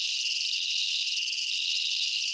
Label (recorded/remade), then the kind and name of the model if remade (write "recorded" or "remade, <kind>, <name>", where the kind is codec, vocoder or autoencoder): recorded